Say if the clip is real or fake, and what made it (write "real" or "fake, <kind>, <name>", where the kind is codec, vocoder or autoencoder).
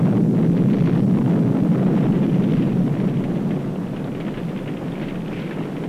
real